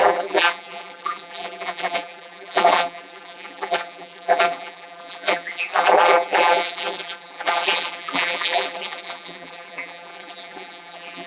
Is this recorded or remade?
remade